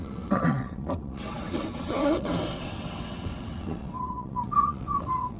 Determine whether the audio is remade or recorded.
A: remade